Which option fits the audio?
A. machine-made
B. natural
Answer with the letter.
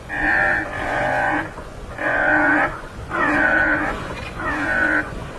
A